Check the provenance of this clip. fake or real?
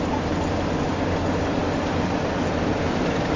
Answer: real